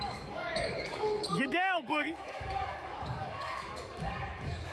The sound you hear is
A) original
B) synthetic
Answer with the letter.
B